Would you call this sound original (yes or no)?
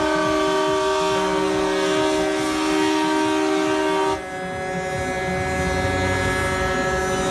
yes